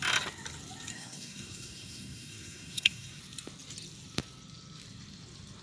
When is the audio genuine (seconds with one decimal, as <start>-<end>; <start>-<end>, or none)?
0.0-0.9; 3.2-5.6